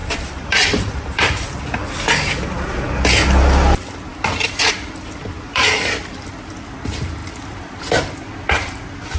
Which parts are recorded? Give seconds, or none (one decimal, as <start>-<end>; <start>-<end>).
1.6-4.1; 6.7-9.2

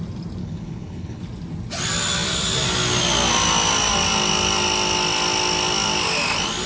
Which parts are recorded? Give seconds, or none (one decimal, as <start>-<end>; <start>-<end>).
0.0-0.4; 1.2-6.7

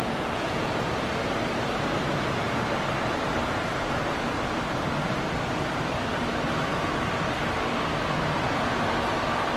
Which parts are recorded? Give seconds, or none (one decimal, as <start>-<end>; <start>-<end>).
0.7-9.6